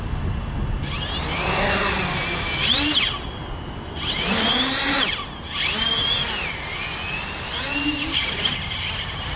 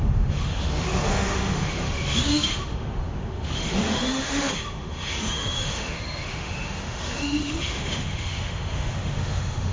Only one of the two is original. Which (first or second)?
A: first